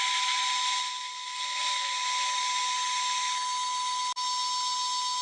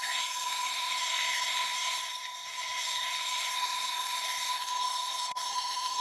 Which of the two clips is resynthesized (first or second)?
second